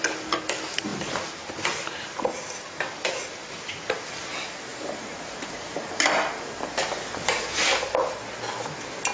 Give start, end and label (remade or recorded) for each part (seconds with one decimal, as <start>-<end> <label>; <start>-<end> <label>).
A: 0.0-0.9 recorded; 0.9-2.3 remade; 2.3-4.7 recorded; 4.7-7.4 remade; 7.4-9.1 recorded